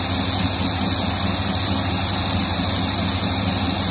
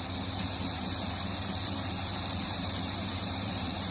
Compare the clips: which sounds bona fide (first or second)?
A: first